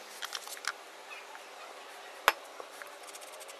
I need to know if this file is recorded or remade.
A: recorded